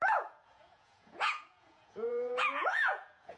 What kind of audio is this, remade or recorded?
remade